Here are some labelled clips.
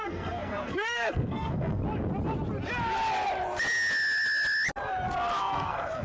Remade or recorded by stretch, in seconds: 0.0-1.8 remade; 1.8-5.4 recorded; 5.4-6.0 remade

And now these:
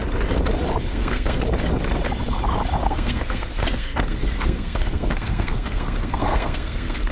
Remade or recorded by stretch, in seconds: 0.0-0.9 recorded; 0.9-1.4 remade; 1.4-2.8 recorded; 2.8-7.1 remade